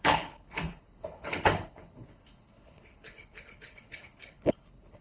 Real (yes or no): no